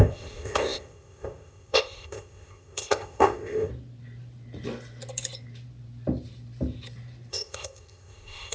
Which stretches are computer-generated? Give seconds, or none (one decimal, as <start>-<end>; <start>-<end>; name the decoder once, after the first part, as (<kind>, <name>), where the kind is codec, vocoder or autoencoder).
0.0-3.7 (codec, ZipCodec); 7.3-8.5